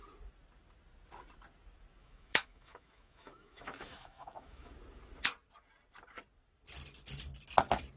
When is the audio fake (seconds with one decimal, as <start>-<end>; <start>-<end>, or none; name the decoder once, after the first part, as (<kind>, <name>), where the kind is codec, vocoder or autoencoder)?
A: 2.0-4.7 (autoencoder, DAC-VAE)